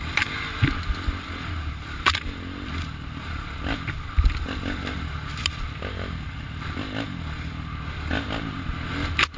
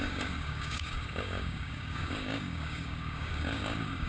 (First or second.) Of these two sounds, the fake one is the second